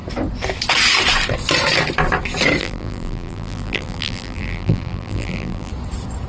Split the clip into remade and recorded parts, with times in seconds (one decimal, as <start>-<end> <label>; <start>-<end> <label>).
0.0-2.6 recorded; 2.6-5.7 remade; 5.7-6.3 recorded